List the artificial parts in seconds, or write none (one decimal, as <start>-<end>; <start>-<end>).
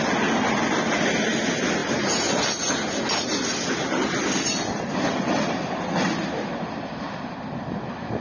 none